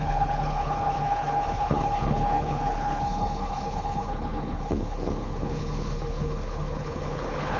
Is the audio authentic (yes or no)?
no